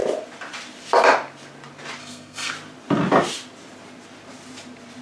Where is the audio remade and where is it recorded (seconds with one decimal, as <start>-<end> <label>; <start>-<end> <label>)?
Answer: 0.0-2.0 recorded; 2.0-2.5 remade; 2.5-5.0 recorded